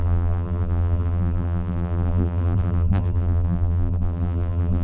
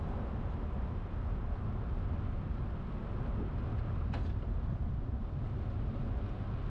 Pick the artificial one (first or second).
first